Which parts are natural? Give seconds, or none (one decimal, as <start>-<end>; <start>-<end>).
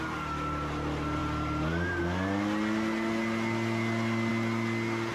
0.0-5.1